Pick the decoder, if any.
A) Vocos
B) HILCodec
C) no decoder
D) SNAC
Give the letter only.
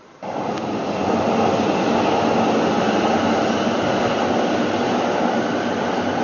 C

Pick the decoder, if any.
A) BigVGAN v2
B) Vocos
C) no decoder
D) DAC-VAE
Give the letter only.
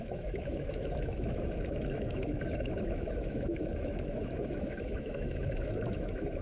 D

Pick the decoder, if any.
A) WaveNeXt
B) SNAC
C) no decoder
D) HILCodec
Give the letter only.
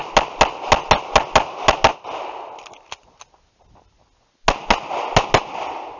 C